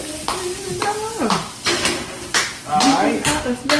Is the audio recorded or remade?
recorded